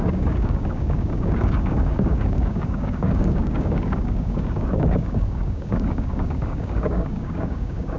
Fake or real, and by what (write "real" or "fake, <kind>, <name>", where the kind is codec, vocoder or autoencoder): fake, codec, DAC